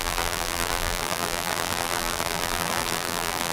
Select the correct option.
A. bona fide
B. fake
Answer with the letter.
B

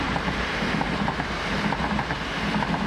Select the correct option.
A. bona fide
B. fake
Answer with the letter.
A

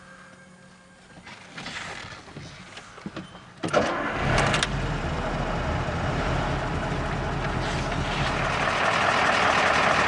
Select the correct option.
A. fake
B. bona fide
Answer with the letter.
B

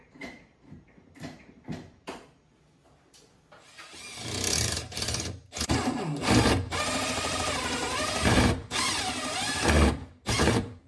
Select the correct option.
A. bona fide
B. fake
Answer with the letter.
B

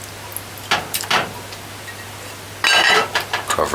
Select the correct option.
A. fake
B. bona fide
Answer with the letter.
B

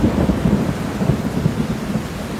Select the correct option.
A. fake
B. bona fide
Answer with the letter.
B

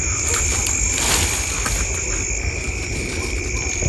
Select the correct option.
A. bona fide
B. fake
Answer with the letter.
B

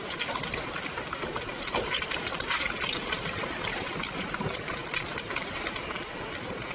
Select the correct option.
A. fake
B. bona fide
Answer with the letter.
B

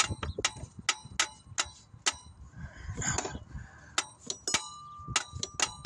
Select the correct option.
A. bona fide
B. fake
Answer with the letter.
A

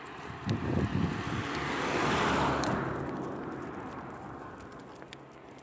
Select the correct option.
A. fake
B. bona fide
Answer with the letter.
A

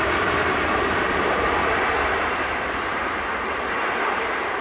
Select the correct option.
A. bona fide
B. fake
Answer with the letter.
B